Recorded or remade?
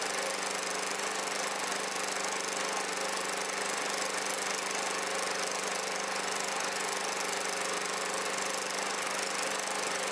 recorded